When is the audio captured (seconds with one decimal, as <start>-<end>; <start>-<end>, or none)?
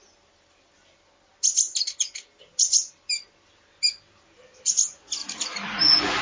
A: 0.0-5.2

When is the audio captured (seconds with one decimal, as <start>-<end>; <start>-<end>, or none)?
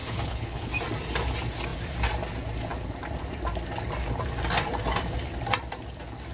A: 0.7-6.3